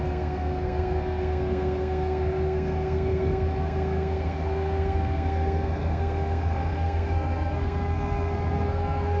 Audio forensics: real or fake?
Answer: fake